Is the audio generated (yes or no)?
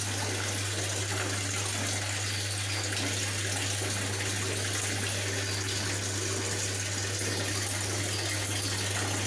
no